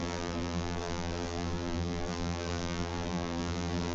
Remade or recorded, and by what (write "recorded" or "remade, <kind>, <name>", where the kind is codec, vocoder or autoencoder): remade, vocoder, BigVGAN v2